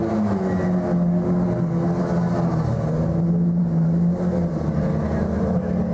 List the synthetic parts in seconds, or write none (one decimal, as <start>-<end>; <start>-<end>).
none